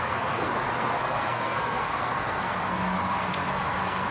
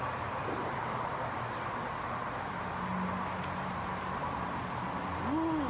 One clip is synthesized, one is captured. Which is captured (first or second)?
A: second